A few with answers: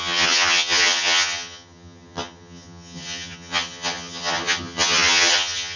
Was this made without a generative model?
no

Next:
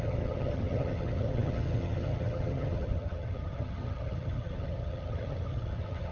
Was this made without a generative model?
no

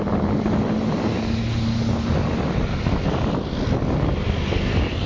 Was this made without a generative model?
yes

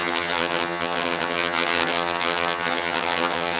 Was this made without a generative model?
no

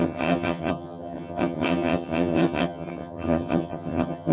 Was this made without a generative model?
no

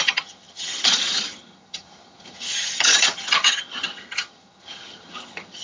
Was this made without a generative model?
no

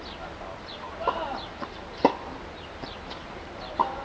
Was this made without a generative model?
yes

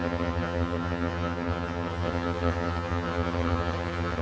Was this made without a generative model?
no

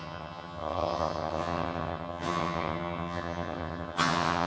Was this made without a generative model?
no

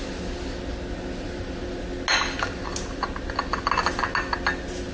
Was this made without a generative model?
yes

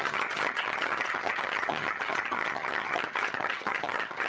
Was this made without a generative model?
no